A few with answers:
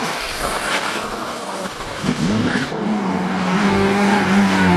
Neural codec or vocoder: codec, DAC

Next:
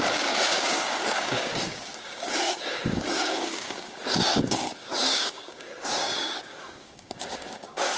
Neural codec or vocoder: codec, DAC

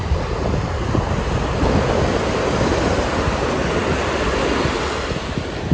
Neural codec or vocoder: none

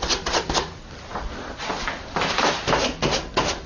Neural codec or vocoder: none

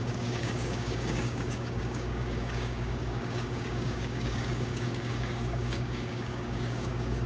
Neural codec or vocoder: codec, DAC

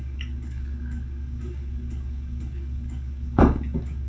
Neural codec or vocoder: codec, DAC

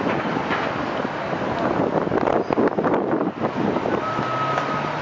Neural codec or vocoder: none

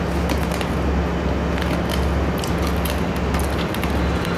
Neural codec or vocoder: none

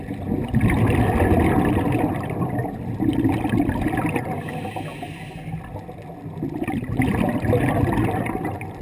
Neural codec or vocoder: none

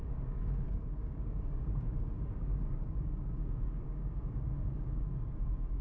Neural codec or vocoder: codec, DAC